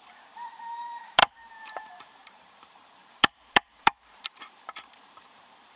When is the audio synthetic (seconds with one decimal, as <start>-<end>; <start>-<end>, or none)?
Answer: 0.0-5.8